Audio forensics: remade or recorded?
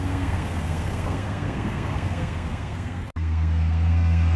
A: remade